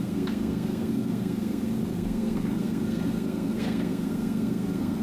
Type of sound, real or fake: fake